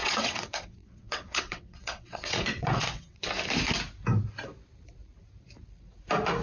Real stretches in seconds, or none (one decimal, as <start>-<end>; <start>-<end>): 3.3-6.4